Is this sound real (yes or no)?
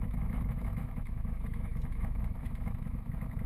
no